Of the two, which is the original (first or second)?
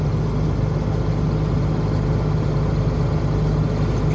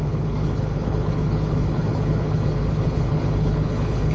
first